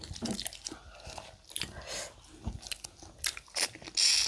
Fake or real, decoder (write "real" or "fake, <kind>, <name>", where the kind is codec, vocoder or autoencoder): real